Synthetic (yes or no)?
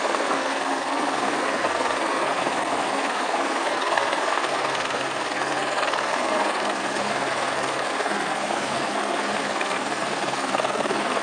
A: yes